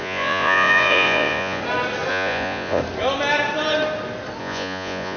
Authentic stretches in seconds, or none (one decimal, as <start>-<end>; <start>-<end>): 1.6-2.1; 2.8-4.4